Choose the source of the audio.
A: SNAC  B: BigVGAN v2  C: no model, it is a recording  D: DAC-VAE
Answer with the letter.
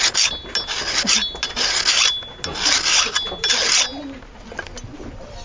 C